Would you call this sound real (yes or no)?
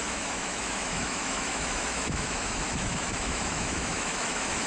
no